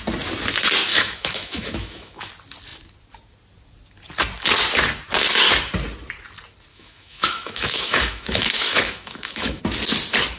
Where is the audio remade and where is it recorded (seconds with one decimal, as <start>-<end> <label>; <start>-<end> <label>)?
0.0-0.9 recorded; 0.9-2.3 remade; 2.3-6.7 recorded; 6.7-9.6 remade; 9.6-10.4 recorded